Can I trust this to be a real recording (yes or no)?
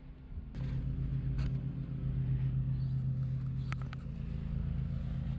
yes